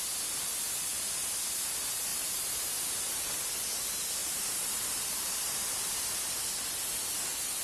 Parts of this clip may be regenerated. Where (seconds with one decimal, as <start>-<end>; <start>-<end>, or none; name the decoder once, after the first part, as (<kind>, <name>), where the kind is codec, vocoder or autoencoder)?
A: 2.1-2.7 (vocoder, BigVGAN v2); 4.2-6.2